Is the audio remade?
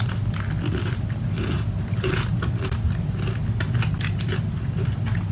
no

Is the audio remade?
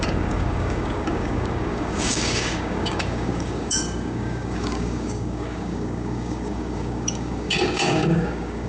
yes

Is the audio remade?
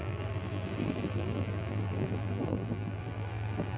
yes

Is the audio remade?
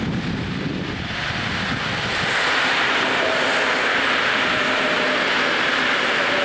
no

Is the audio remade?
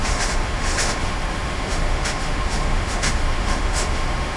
yes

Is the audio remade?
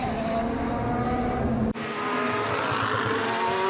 no